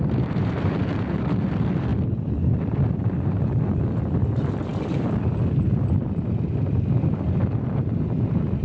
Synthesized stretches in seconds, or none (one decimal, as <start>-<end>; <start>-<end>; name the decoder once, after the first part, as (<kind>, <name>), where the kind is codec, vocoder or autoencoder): 0.0-4.7 (vocoder, BigVGAN v2); 6.8-8.6